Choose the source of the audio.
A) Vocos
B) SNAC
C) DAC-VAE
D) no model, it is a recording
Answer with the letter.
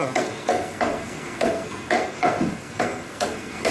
B